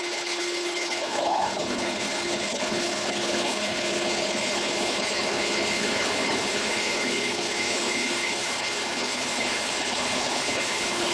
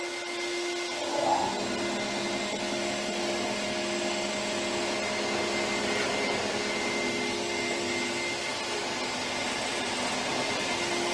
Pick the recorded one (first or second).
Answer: second